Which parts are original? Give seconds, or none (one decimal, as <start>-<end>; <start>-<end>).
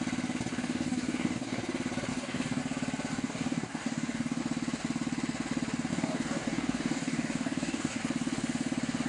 0.0-0.5; 1.6-2.1; 2.6-3.1; 4.4-5.9; 8.0-9.1